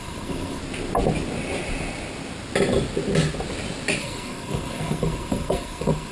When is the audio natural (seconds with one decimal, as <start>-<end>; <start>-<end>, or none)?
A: 0.6-4.0